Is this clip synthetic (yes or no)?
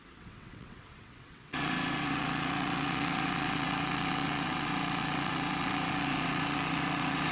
yes